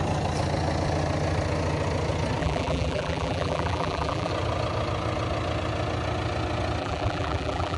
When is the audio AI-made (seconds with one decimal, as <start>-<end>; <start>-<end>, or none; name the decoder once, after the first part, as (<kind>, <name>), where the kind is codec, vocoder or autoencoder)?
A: 2.4-4.3 (vocoder, BigVGAN v2); 6.8-7.8